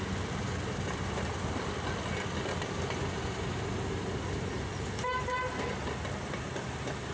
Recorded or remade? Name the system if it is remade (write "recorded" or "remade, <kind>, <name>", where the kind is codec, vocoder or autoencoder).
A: recorded